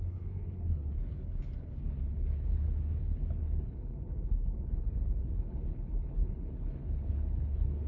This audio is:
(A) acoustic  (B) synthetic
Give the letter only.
B